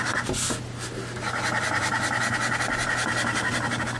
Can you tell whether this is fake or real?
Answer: real